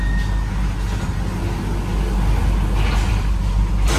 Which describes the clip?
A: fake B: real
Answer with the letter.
B